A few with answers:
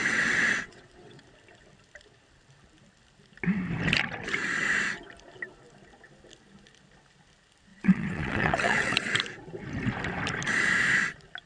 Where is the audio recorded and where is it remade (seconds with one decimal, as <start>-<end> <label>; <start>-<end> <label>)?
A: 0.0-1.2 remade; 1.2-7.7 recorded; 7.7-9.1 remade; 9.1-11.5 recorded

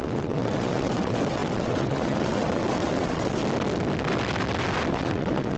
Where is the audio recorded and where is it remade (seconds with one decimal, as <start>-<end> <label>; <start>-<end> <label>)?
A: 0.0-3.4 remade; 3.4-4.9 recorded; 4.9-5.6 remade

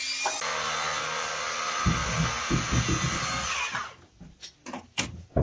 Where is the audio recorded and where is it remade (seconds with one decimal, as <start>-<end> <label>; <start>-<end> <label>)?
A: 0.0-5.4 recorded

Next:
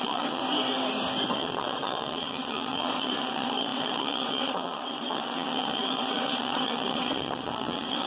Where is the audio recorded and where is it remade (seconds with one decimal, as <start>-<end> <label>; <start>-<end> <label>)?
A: 0.0-0.4 remade; 0.4-1.3 recorded; 1.3-8.1 remade

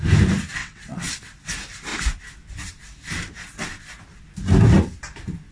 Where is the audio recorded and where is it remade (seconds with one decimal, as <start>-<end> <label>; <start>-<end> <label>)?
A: 0.0-0.6 recorded; 0.6-1.2 remade; 1.2-5.5 recorded

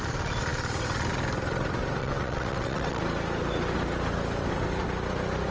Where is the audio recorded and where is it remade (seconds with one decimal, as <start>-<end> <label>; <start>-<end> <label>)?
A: 0.0-2.0 recorded; 2.0-3.0 remade; 3.0-5.5 recorded